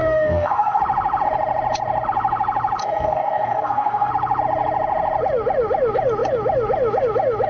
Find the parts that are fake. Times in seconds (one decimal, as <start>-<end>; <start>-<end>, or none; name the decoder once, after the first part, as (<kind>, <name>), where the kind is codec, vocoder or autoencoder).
0.0-0.8 (codec, DAC); 2.8-4.1